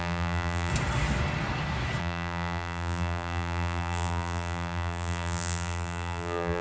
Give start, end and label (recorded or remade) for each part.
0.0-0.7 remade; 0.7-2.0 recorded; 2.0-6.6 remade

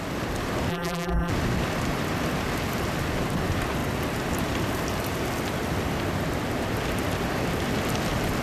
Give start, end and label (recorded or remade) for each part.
0.0-0.7 recorded; 0.7-1.3 remade; 1.3-8.4 recorded

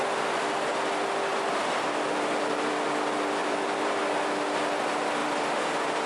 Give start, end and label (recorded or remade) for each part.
0.0-3.4 recorded; 3.4-4.0 remade; 4.0-5.2 recorded; 5.2-6.1 remade

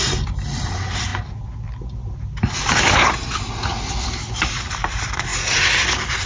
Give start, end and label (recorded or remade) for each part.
0.0-1.1 remade; 1.1-4.1 recorded; 4.1-5.3 remade; 5.3-6.3 recorded

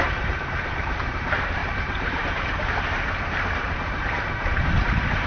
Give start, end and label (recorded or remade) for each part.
0.0-5.3 remade

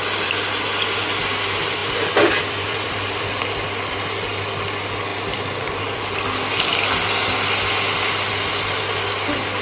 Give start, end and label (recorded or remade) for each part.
0.0-1.8 recorded; 1.8-3.4 remade; 3.4-9.6 recorded

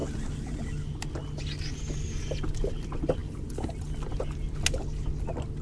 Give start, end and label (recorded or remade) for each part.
0.0-5.6 recorded

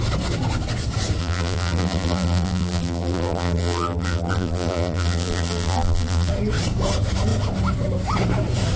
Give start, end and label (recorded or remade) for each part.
0.0-1.2 recorded; 1.2-6.3 remade; 6.3-8.8 recorded